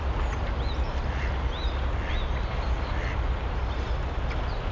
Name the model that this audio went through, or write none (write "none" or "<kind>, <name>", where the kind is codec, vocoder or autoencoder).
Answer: none